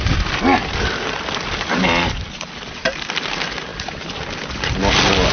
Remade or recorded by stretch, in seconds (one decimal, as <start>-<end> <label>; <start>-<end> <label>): 0.0-5.3 recorded